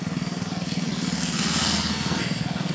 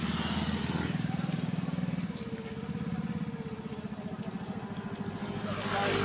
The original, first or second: second